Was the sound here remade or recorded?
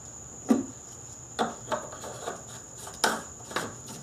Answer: recorded